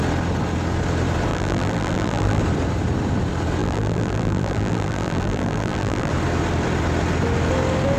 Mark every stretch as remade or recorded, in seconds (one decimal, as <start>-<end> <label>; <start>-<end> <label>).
0.0-1.3 recorded; 1.3-2.4 remade; 2.4-3.6 recorded; 3.6-6.1 remade; 6.1-8.0 recorded